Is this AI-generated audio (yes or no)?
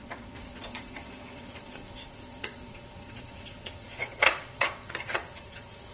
yes